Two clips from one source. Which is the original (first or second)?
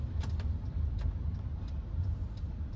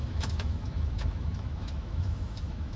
first